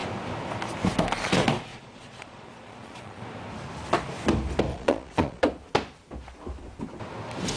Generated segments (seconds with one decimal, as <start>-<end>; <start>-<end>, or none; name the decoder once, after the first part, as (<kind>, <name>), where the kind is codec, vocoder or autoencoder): 1.7-3.2 (vocoder, Vocos); 4.7-5.4